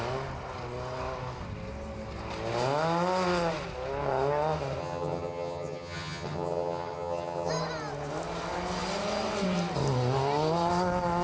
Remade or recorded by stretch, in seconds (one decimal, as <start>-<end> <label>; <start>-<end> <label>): 0.0-4.8 recorded; 4.8-7.5 remade; 7.5-11.2 recorded